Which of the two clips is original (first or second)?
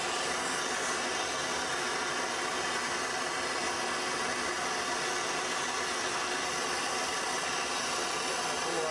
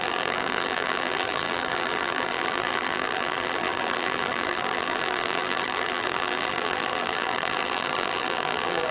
first